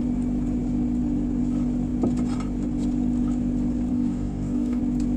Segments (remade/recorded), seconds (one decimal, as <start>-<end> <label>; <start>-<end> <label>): 0.0-3.9 recorded; 3.9-4.8 remade; 4.8-5.2 recorded